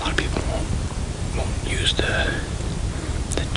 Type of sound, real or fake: real